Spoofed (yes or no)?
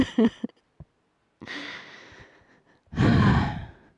no